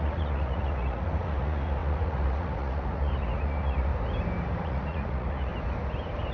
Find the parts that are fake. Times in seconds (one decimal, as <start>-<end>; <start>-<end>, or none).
0.0-3.9; 4.6-5.5